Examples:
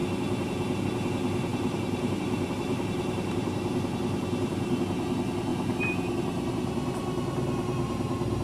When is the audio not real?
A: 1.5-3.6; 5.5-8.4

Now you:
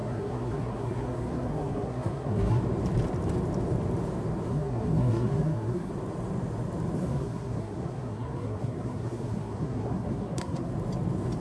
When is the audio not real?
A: 0.0-2.6; 4.5-5.9; 7.0-10.7

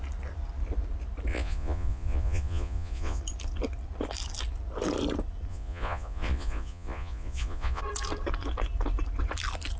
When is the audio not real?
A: 1.3-3.2; 5.5-7.8

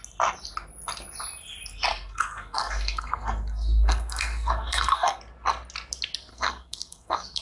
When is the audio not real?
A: 1.9-5.2; 6.3-7.4

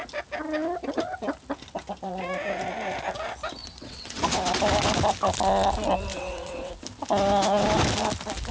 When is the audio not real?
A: 3.6-4.2; 6.1-6.7

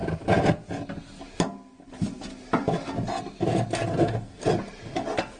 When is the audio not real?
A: 3.9-4.4

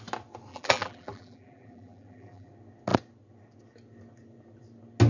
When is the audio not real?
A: 0.5-2.5